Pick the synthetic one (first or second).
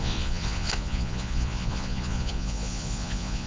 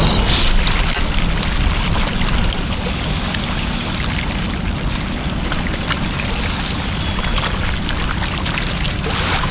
first